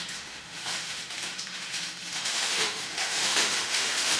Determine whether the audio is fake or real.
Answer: fake